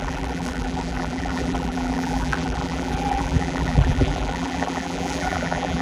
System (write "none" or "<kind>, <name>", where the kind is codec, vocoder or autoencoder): vocoder, BigVGAN v2